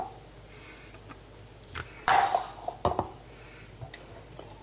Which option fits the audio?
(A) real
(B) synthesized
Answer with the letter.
A